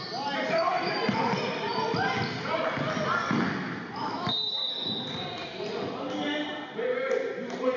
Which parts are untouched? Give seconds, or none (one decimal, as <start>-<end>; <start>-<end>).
0.0-7.8